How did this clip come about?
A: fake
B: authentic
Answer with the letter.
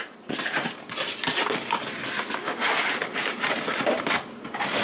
B